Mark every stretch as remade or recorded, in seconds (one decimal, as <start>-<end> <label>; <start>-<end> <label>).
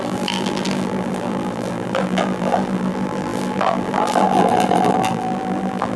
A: 0.0-6.0 remade